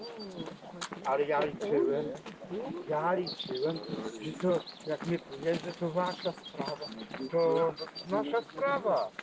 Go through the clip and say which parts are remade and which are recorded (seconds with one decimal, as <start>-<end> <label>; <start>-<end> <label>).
0.0-1.9 recorded; 1.9-2.7 remade; 2.7-3.9 recorded; 3.9-4.5 remade; 4.5-9.2 recorded